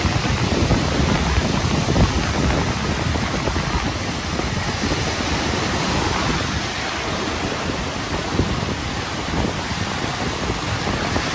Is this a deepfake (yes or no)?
no